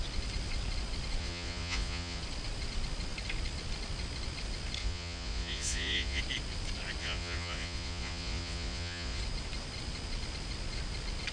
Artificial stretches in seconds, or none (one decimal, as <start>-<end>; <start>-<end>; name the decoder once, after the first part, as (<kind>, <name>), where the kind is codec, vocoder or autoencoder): 1.2-2.2 (vocoder, Vocos); 4.8-6.2; 7.0-9.2